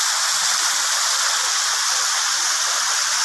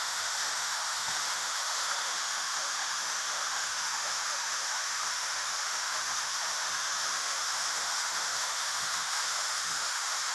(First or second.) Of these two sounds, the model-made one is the second